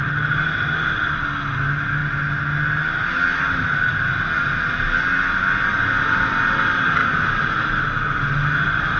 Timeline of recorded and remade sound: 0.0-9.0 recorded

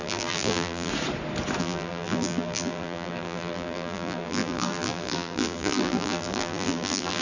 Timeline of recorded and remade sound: 0.0-0.9 remade; 0.9-1.6 recorded; 1.6-7.2 remade

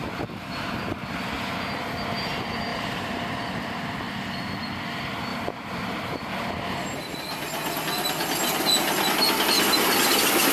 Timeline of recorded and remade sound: 0.0-2.7 recorded; 2.7-3.3 remade; 3.3-5.3 recorded; 5.3-6.3 remade; 6.3-10.5 recorded

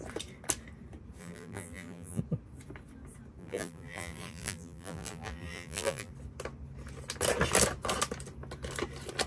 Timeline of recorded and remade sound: 0.0-1.2 recorded; 1.2-2.2 remade; 2.2-3.4 recorded; 3.4-6.1 remade; 6.1-9.3 recorded

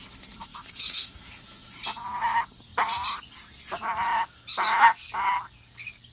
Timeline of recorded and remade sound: 0.0-0.5 recorded; 0.5-1.7 remade; 1.7-6.1 recorded

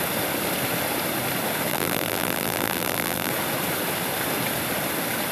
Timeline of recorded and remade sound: 0.0-1.7 recorded; 1.7-3.3 remade; 3.3-5.3 recorded